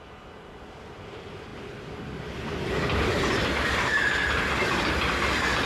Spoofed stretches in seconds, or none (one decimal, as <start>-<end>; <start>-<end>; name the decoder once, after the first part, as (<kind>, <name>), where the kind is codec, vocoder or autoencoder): none